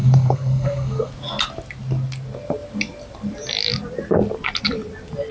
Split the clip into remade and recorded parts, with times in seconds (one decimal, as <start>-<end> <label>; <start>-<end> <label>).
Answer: 0.0-1.1 remade; 1.1-5.3 recorded